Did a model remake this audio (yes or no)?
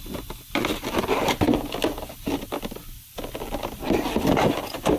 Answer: no